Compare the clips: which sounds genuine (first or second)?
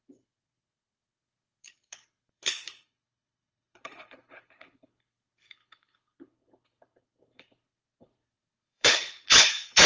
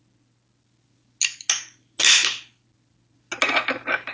second